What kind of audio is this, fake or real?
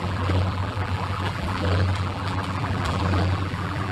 fake